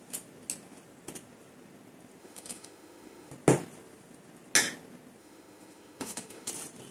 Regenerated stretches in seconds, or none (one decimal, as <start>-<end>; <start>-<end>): 2.2-3.3; 5.2-6.5